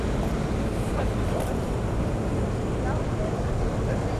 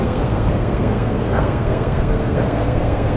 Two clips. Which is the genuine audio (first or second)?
first